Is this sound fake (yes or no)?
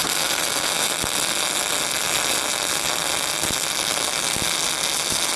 no